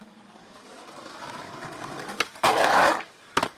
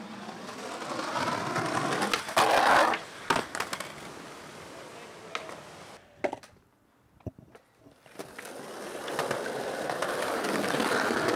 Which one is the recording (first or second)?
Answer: second